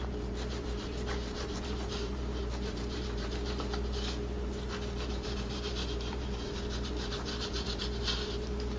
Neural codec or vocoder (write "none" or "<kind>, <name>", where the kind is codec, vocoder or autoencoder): vocoder, BigVGAN v2